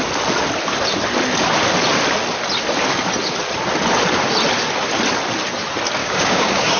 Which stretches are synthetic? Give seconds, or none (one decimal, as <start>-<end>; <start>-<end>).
6.0-6.8